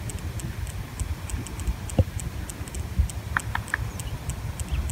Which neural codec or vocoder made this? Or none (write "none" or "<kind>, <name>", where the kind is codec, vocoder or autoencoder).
none